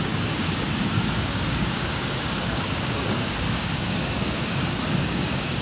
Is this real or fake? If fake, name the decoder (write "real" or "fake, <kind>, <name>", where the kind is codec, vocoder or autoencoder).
fake, codec, DAC